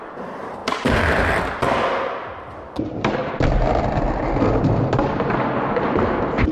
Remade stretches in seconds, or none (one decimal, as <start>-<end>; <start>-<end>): 3.2-4.0